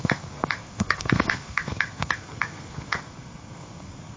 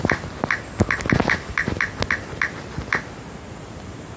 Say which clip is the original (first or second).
second